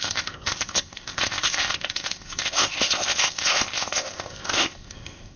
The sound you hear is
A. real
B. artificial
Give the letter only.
B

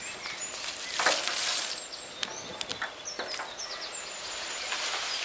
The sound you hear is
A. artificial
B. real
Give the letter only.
B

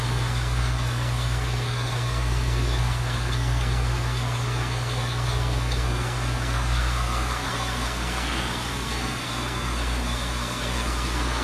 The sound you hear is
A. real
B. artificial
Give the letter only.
B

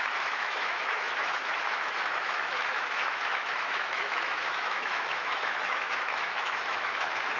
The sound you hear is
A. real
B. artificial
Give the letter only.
B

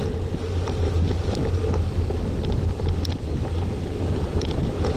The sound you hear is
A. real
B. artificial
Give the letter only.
A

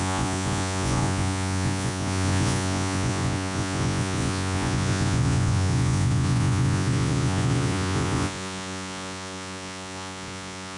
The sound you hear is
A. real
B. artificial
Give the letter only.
B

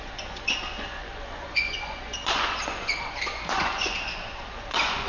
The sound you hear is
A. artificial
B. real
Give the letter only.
A